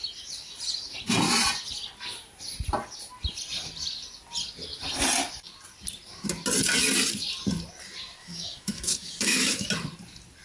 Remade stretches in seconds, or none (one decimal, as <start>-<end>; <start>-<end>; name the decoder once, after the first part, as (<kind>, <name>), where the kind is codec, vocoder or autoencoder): 8.2-9.7 (autoencoder, DAC-VAE)